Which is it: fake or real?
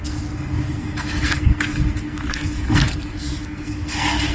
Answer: fake